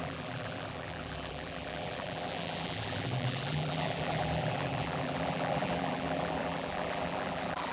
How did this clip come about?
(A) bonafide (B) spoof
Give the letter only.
B